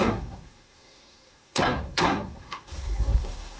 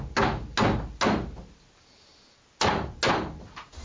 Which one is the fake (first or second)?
first